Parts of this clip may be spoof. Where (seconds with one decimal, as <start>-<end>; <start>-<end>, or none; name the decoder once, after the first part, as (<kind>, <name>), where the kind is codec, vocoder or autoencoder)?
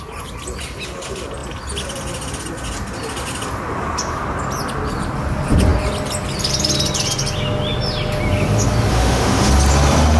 8.9-9.5 (autoencoder, DAC-VAE)